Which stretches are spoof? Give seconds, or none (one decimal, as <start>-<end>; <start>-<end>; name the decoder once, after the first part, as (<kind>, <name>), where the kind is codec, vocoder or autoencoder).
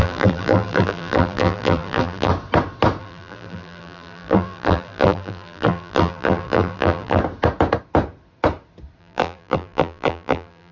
0.0-2.3 (vocoder, BigVGAN v2); 3.0-7.2; 9.0-10.7